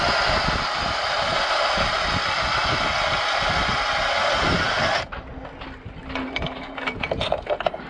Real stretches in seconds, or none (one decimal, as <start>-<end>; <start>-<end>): 0.0-7.9